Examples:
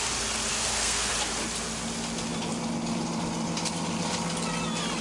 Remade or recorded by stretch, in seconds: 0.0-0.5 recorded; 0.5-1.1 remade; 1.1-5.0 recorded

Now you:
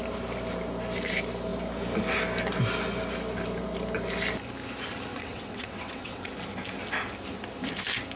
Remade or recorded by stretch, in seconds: 0.0-5.1 recorded; 5.1-6.3 remade; 6.3-8.2 recorded

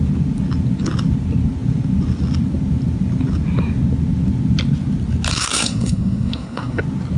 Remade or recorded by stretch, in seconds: 0.0-5.3 recorded; 5.3-6.8 remade; 6.8-7.2 recorded

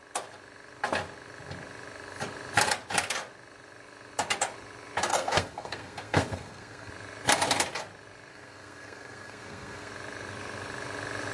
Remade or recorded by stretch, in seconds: 0.0-5.1 recorded; 5.1-6.9 remade; 6.9-8.3 recorded; 8.3-9.9 remade; 9.9-11.3 recorded

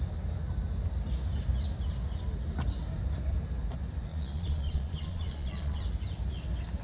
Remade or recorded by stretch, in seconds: 0.0-4.1 recorded; 4.1-5.8 remade; 5.8-6.8 recorded